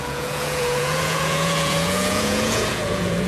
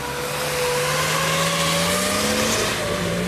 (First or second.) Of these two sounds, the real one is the second